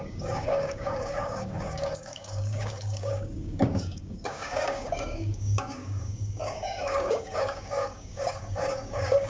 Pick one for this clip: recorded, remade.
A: remade